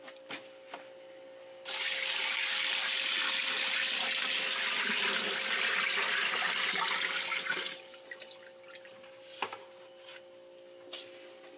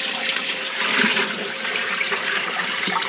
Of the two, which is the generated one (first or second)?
second